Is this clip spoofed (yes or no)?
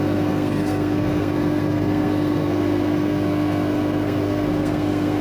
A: yes